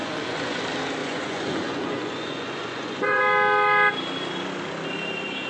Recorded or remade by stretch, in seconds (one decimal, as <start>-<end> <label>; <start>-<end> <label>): 0.0-0.6 remade; 0.6-1.0 recorded; 1.0-3.2 remade; 3.2-5.5 recorded